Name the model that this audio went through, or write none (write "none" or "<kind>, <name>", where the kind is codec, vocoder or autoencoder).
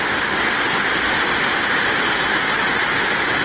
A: none